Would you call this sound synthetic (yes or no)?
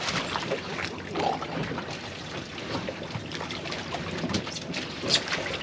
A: no